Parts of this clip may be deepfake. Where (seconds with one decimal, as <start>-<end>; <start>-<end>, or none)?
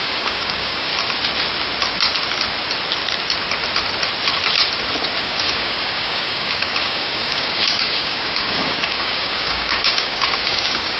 0.0-0.9; 5.2-11.0